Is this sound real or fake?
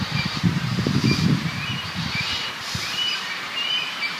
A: fake